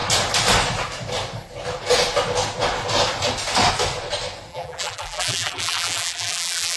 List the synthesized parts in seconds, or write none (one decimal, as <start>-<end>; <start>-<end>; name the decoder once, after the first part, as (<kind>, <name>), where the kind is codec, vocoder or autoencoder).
4.5-6.8 (vocoder, BigVGAN v2)